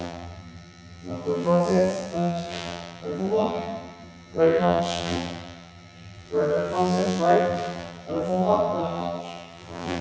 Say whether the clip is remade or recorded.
remade